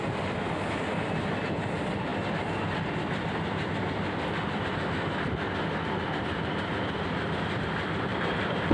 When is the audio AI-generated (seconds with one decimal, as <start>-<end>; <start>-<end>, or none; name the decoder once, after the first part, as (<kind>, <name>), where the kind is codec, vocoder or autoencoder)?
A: 8.1-8.7 (vocoder, BigVGAN v2)